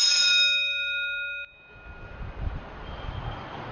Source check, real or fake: real